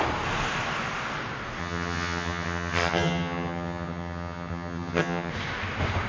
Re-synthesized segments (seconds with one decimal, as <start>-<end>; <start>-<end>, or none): 1.6-5.3